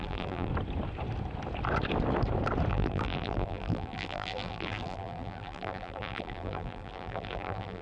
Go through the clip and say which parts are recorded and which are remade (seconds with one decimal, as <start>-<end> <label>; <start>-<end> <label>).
0.0-0.5 remade; 0.5-2.7 recorded; 2.7-7.8 remade